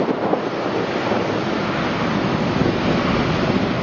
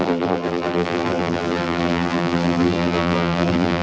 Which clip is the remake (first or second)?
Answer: second